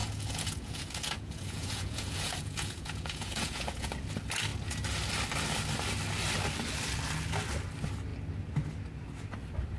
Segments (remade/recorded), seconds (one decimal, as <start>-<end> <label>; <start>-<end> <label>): 0.0-3.9 remade; 3.9-9.8 recorded